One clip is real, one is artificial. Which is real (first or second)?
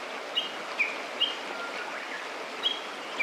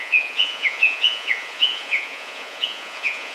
first